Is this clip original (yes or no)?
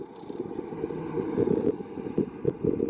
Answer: no